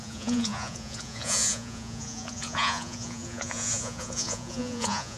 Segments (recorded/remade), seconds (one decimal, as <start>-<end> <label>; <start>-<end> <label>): 0.0-5.2 remade